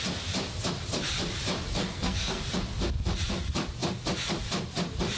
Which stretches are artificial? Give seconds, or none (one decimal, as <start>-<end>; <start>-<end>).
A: 1.8-2.4